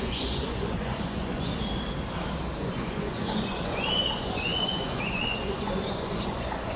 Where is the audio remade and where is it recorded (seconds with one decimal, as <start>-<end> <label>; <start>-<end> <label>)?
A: 0.0-1.5 remade; 1.5-2.6 recorded; 2.6-6.8 remade